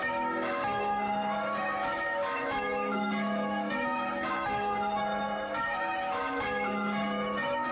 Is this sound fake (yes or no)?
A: yes